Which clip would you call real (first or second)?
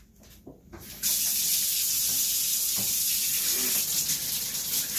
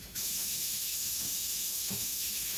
first